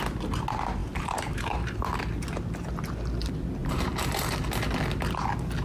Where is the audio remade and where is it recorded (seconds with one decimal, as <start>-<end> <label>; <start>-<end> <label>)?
0.0-0.8 recorded; 0.8-1.8 remade; 1.8-3.6 recorded; 3.6-4.3 remade; 4.3-5.6 recorded